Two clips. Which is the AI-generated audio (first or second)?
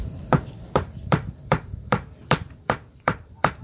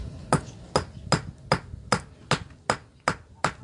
first